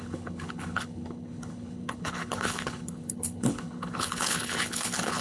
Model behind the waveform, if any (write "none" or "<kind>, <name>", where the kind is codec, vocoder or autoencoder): codec, HILCodec